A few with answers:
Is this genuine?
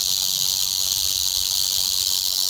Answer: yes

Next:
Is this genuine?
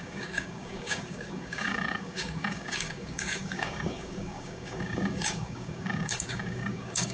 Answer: no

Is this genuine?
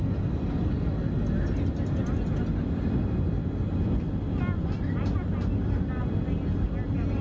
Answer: yes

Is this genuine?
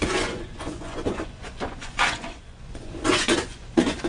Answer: no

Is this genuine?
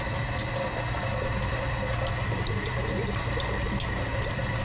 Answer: yes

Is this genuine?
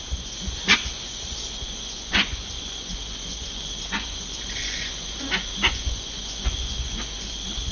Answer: no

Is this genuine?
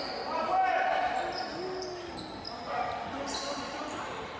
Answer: yes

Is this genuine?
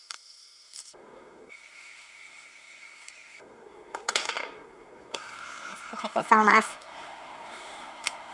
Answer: no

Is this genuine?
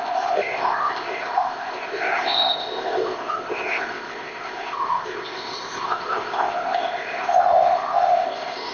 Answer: no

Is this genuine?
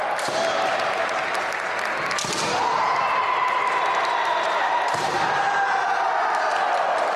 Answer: yes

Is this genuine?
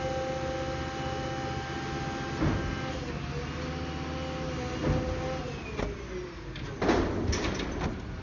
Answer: yes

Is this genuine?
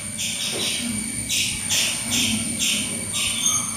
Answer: yes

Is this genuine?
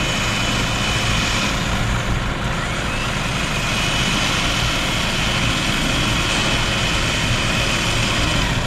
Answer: yes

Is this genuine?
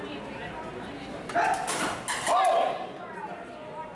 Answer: yes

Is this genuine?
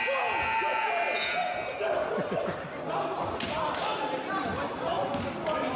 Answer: yes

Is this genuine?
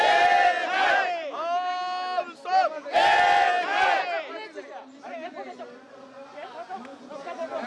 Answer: yes